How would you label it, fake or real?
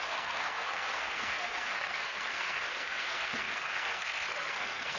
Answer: fake